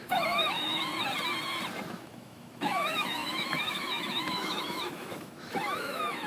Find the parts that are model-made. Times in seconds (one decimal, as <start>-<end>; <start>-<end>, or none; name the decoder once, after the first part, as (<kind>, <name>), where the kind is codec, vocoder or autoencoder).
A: 0.0-0.9 (autoencoder, DAC-VAE); 1.9-6.3